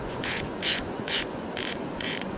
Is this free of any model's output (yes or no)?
no